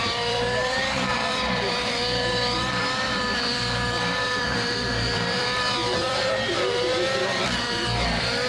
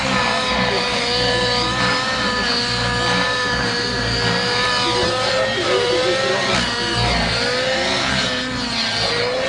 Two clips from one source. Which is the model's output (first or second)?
first